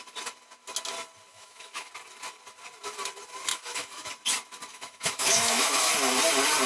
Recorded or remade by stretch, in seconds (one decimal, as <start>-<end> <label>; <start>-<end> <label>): 0.0-1.3 recorded; 1.3-1.9 remade; 1.9-3.5 recorded; 3.5-4.1 remade; 4.1-4.7 recorded; 4.7-5.9 remade; 5.9-6.7 recorded